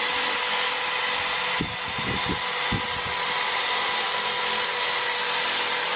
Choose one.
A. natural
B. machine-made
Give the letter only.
A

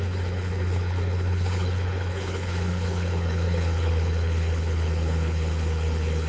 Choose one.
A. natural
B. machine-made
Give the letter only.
B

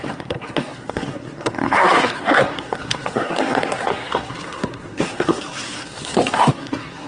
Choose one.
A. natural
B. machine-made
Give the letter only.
B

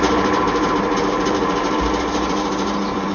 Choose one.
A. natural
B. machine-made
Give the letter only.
B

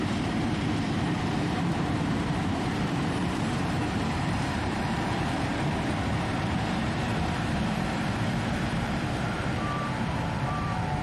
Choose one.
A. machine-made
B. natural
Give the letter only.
A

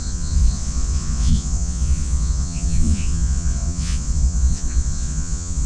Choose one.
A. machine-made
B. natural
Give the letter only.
A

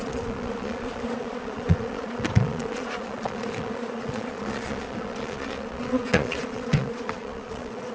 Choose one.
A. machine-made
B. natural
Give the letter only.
A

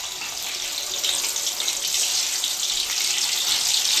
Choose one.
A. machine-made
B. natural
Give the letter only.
B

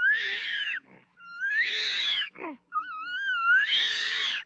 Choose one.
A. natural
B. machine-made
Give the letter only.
B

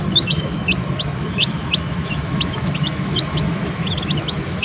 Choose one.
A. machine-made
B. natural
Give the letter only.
A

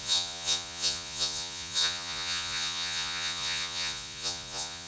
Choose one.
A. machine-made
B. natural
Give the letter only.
A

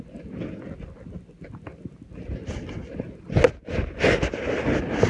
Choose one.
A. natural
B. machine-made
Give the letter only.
A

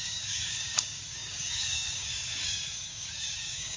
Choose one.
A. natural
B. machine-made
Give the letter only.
B